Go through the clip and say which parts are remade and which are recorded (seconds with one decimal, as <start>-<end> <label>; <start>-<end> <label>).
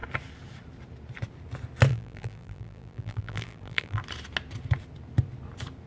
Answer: 0.0-1.9 recorded; 1.9-4.0 remade; 4.0-5.9 recorded